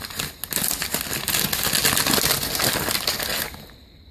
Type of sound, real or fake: real